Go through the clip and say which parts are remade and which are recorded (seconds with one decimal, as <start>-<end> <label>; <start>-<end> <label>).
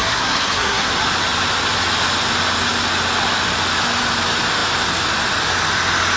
0.0-0.9 remade; 0.9-6.2 recorded